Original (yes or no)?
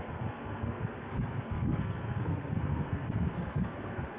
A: no